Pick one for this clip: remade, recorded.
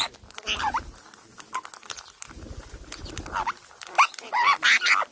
recorded